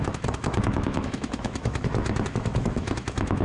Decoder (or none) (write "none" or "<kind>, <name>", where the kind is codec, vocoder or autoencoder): autoencoder, DAC-VAE